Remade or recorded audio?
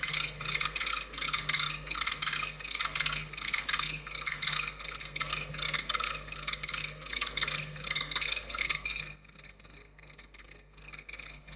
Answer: remade